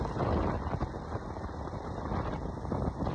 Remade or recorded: recorded